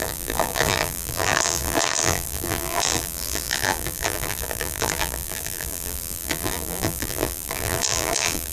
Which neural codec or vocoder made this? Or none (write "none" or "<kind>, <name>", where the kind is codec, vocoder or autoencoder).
vocoder, BigVGAN v2